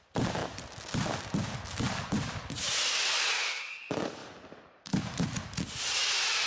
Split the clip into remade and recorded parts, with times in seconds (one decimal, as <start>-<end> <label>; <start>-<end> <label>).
0.0-6.5 recorded